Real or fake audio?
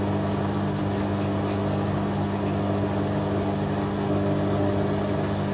real